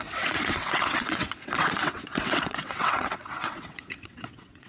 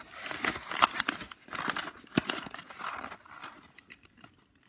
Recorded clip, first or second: second